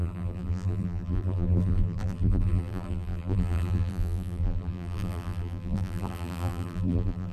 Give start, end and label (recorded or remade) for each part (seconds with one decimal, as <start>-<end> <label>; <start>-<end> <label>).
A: 0.0-7.3 remade